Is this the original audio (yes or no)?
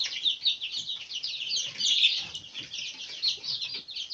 yes